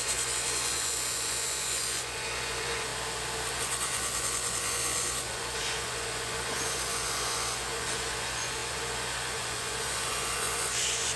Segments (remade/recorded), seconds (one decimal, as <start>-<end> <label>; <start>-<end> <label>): 0.0-2.9 remade; 2.9-3.5 recorded; 3.5-11.2 remade